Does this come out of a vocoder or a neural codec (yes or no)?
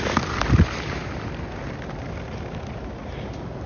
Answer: no